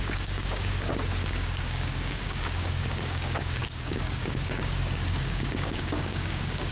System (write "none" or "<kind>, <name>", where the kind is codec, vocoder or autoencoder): codec, DAC